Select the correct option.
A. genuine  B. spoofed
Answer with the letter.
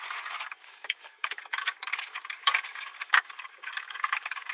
B